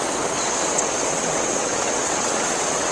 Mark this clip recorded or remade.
remade